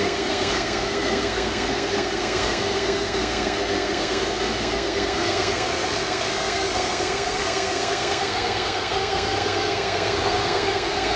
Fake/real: fake